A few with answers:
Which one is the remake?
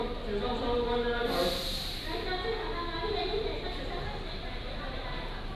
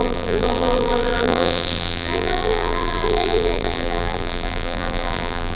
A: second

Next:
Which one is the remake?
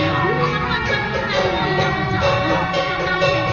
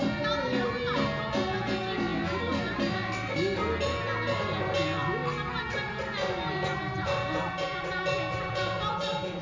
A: first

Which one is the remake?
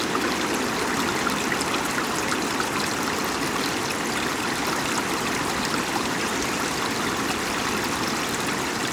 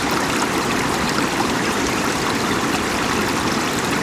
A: second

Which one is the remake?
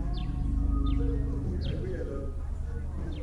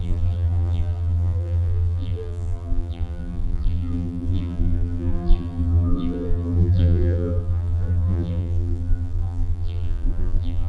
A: second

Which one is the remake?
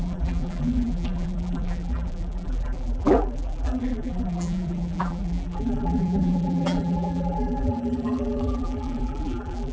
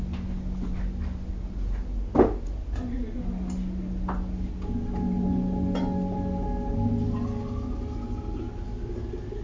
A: first